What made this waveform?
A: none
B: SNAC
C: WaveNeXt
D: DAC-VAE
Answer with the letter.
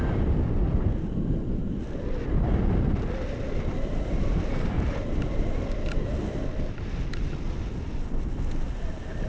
A